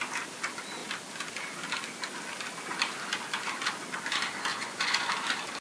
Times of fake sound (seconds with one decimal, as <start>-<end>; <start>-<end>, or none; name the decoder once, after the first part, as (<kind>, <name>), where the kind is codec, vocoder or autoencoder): 4.5-5.1 (vocoder, Vocos)